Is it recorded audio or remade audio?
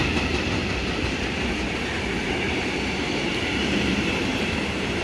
remade